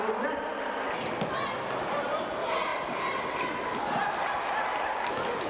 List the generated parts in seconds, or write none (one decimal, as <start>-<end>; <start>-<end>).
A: 0.0-0.5; 1.8-2.7; 5.1-5.5